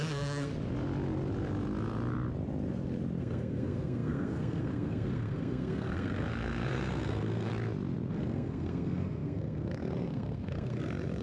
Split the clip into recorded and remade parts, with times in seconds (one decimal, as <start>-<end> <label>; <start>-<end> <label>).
0.0-0.5 remade; 0.5-3.2 recorded; 3.2-7.5 remade; 7.5-8.1 recorded; 8.1-11.2 remade